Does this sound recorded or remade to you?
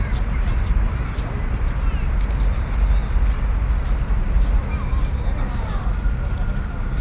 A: recorded